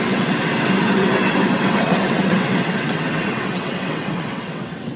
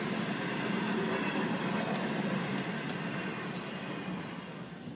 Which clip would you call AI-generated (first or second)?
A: first